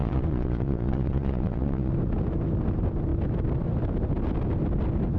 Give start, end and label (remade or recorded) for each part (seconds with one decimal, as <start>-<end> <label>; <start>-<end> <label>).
0.0-1.9 remade; 1.9-5.2 recorded